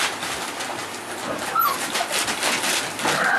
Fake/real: real